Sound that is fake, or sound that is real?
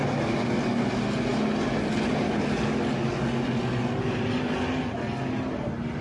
real